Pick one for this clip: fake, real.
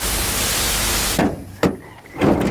real